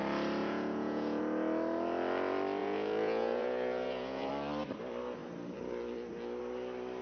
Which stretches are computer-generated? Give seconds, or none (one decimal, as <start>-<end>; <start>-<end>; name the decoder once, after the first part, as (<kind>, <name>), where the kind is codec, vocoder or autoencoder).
0.4-1.2 (vocoder, Vocos); 2.6-4.3